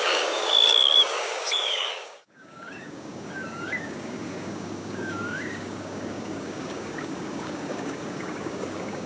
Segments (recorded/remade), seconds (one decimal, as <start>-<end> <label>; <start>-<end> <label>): 0.0-9.1 remade